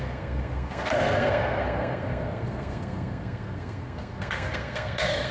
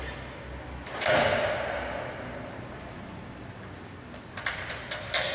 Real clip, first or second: second